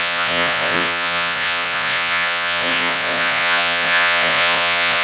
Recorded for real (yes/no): no